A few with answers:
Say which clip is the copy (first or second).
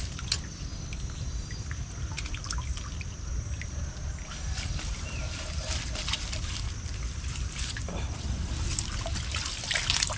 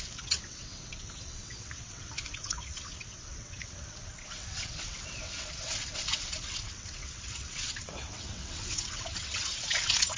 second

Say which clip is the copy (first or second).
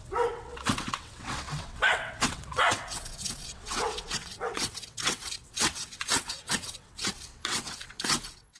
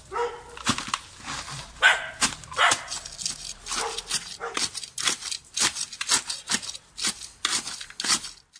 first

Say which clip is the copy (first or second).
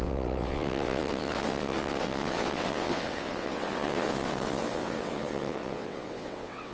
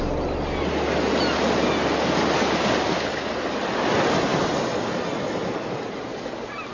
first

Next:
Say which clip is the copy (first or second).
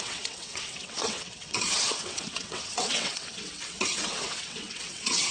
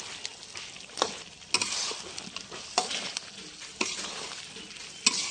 first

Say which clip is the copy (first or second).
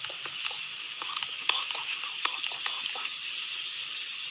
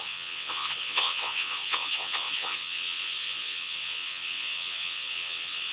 second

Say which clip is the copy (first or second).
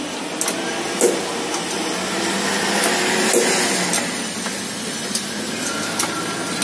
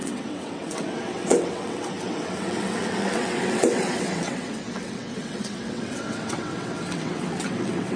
second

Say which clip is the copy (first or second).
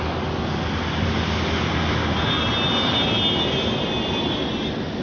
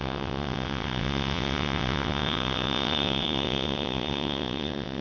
second